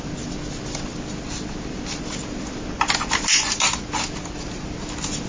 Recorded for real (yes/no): yes